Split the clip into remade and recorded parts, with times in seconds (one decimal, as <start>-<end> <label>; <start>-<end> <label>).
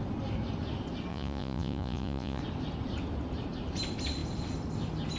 0.0-1.1 recorded; 1.1-2.4 remade; 2.4-5.2 recorded